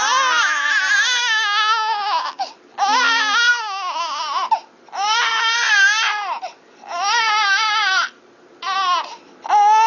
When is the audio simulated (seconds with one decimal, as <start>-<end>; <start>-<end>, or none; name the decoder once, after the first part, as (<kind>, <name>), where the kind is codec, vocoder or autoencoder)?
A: 1.2-2.5 (codec, DAC); 3.5-4.2